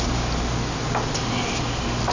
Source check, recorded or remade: recorded